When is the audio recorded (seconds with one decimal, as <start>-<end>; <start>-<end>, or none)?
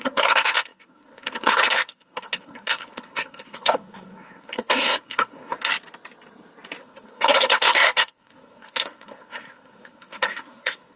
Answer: 5.7-6.8